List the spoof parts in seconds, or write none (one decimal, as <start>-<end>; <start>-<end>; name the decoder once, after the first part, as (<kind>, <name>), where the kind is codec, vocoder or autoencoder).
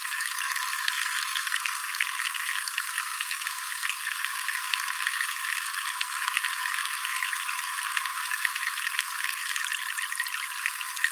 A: 0.0-9.6 (codec, SNAC); 10.6-11.1